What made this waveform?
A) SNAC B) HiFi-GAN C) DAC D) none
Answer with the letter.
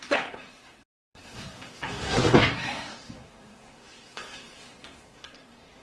A